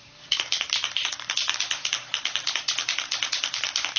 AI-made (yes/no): yes